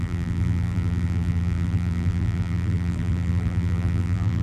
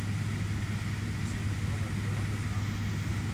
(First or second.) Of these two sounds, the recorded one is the second